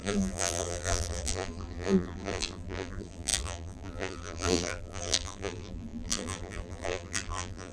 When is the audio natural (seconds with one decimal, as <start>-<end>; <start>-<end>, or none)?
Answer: none